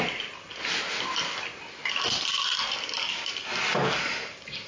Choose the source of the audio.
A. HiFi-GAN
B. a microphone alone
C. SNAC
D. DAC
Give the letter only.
B